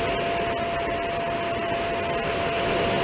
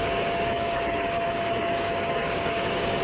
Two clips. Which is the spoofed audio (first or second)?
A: second